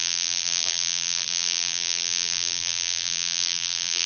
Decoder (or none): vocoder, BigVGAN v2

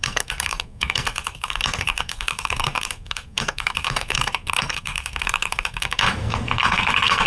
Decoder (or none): codec, SNAC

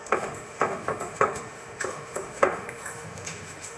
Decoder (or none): autoencoder, DAC-VAE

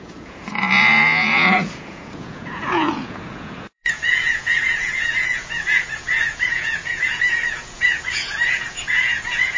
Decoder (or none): vocoder, Vocos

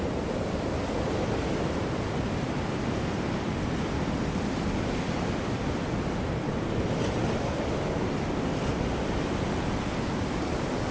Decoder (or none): none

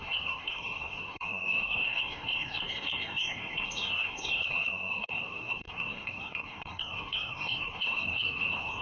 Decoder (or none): codec, SNAC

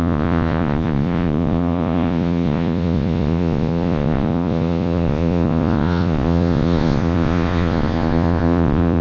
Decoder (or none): vocoder, Vocos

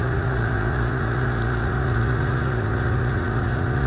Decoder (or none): vocoder, Vocos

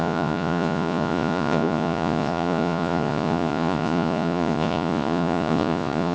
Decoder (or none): vocoder, Vocos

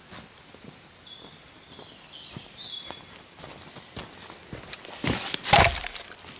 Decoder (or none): none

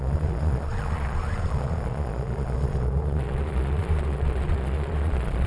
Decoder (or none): vocoder, Vocos